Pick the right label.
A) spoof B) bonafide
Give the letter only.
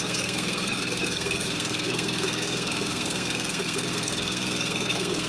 A